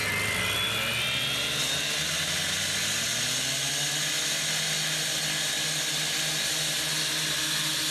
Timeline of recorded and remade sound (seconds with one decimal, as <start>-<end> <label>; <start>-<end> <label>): 0.0-7.9 recorded